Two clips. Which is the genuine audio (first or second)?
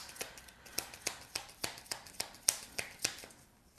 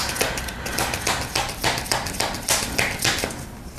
second